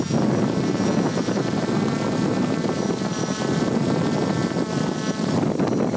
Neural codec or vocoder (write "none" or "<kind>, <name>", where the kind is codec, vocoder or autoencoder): none